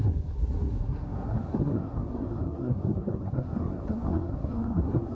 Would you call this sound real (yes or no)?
no